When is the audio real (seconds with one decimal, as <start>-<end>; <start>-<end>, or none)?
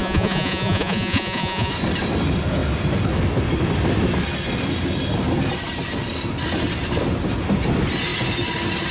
1.7-8.9